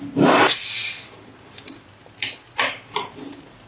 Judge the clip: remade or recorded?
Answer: recorded